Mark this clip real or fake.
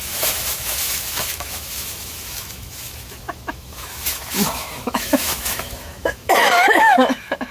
fake